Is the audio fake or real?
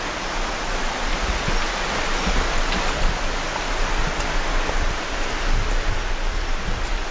real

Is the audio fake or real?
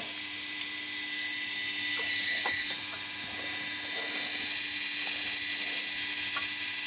real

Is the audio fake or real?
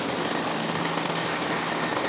real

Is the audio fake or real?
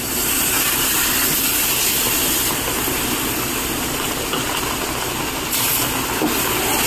real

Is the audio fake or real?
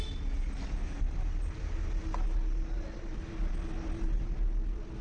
real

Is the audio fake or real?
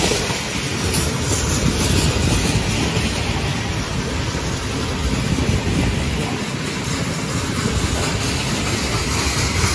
real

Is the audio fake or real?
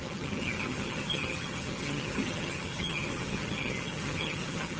fake